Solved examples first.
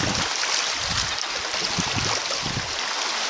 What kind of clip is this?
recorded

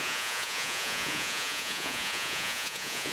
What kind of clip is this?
remade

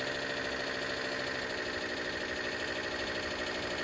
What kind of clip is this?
recorded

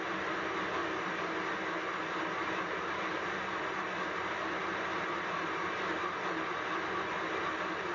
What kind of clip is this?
recorded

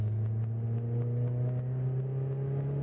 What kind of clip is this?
recorded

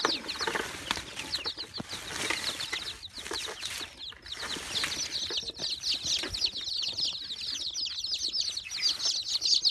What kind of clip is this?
recorded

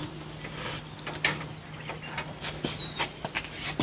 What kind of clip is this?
recorded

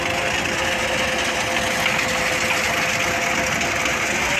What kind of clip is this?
recorded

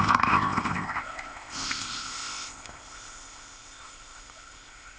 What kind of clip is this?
remade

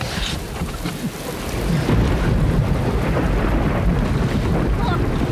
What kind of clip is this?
recorded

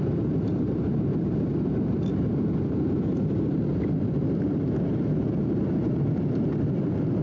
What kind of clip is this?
remade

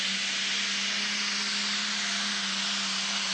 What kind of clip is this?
recorded